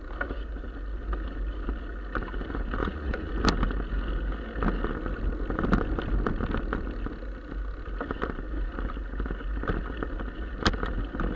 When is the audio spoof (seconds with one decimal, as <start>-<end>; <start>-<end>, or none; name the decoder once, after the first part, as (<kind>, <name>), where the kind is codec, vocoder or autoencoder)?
2.8-3.3 (vocoder, Vocos)